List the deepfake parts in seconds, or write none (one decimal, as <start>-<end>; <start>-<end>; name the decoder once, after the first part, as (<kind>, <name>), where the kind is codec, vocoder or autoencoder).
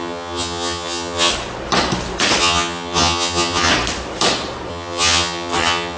0.0-1.3 (vocoder, HiFi-GAN); 2.4-3.7; 4.7-6.0